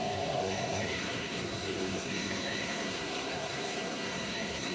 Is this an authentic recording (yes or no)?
no